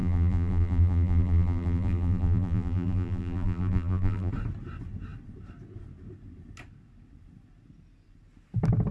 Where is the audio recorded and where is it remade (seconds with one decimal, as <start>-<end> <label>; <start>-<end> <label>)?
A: 0.0-4.3 remade; 4.3-8.9 recorded